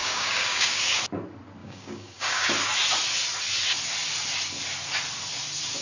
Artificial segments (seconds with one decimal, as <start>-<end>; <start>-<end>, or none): 0.0-1.0; 1.6-2.5